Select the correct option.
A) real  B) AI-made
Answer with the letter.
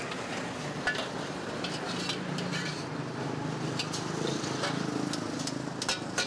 A